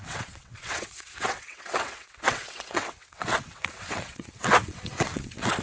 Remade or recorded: remade